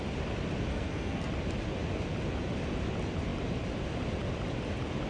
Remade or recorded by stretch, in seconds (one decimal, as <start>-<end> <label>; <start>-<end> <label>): 0.0-0.7 recorded; 0.7-1.3 remade; 1.3-5.1 recorded